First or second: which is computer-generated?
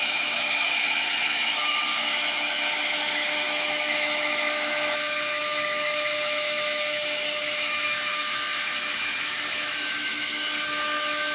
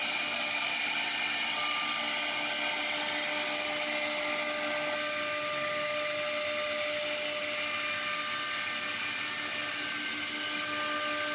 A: first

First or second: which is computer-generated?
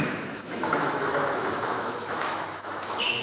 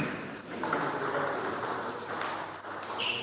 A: first